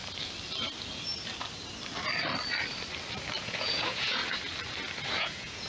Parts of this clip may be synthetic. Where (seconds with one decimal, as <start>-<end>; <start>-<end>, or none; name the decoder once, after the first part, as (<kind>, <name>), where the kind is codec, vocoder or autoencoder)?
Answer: 3.4-4.2 (vocoder, Vocos); 5.1-5.7